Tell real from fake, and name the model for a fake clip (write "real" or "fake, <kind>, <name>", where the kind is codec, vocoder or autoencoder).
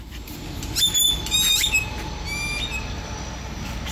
real